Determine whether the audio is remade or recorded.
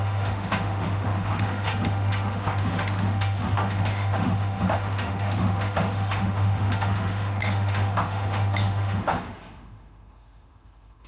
remade